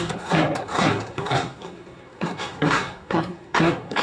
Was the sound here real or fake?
fake